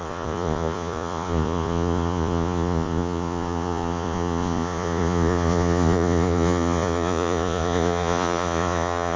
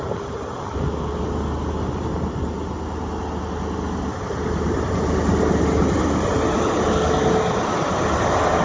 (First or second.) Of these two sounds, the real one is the second